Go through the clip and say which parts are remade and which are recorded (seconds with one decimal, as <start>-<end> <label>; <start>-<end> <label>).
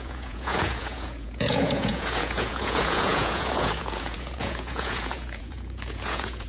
0.0-6.5 remade